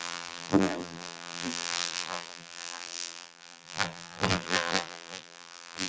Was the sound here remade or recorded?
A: remade